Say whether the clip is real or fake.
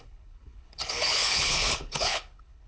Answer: fake